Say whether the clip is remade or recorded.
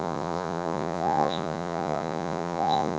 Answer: remade